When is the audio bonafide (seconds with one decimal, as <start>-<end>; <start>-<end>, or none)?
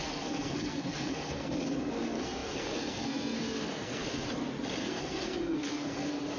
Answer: 4.0-4.8